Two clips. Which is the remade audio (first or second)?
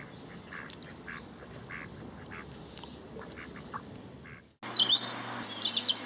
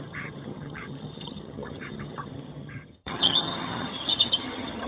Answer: second